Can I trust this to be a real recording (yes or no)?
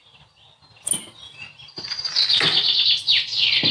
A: yes